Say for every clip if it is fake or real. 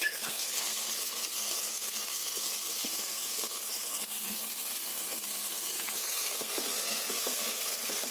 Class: fake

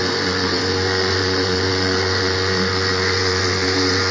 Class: fake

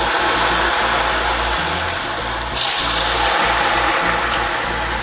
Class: real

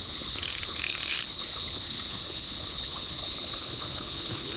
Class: fake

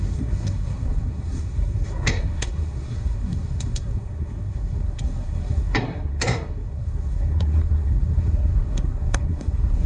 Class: fake